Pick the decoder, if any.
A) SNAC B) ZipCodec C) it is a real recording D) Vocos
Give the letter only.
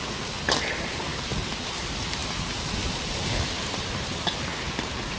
C